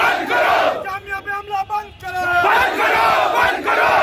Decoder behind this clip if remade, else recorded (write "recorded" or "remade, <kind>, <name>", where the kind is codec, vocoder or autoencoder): remade, vocoder, BigVGAN v2